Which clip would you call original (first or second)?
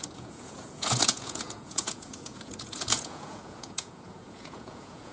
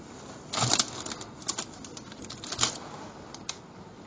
second